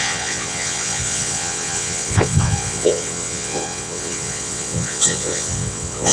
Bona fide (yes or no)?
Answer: no